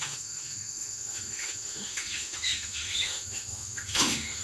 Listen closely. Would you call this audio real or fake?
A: fake